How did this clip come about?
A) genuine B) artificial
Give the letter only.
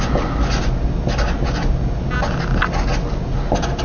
A